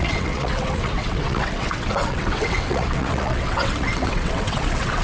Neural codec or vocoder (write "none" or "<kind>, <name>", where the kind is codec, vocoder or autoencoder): vocoder, WaveNeXt